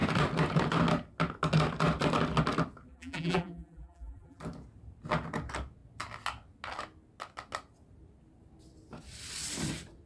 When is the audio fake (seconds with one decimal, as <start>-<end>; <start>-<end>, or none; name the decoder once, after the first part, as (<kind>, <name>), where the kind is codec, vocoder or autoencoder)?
2.9-4.4 (vocoder, BigVGAN v2)